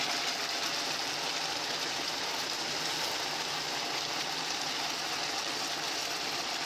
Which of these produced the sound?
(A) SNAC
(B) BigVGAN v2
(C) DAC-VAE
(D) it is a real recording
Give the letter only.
D